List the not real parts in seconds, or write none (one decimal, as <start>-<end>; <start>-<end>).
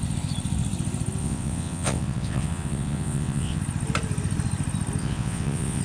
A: 1.2-3.6; 5.0-5.8